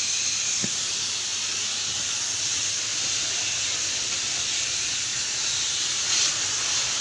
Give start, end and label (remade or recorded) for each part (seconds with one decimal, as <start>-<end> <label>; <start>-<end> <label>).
0.0-7.0 recorded